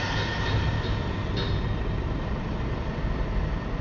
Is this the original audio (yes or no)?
yes